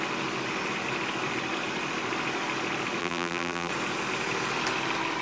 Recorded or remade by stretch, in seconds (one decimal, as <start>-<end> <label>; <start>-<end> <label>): 0.0-3.0 recorded; 3.0-3.7 remade; 3.7-5.2 recorded